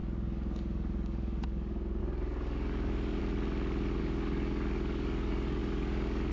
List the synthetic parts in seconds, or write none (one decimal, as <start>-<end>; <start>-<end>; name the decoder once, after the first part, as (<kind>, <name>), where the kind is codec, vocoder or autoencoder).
0.0-3.2 (codec, DAC); 4.0-6.3